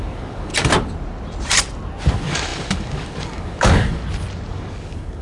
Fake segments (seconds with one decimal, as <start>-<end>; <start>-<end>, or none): 0.0-0.5; 2.1-4.0; 4.5-5.2